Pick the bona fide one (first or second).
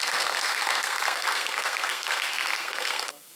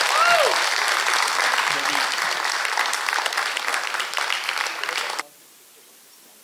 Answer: second